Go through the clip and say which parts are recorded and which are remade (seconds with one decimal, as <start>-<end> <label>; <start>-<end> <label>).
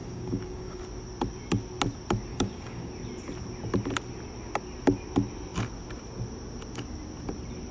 0.0-0.8 remade; 0.8-2.3 recorded; 2.3-2.9 remade; 2.9-7.7 recorded